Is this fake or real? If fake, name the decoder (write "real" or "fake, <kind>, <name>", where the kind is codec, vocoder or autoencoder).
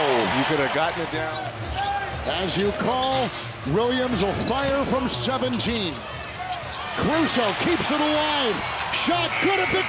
real